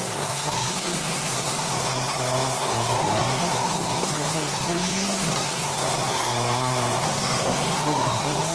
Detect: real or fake fake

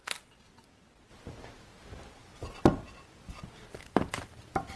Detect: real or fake real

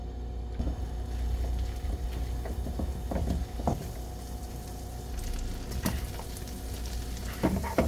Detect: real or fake real